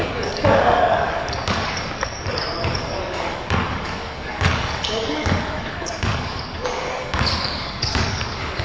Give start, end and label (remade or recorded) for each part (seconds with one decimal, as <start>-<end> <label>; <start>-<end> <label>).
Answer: 0.0-8.6 remade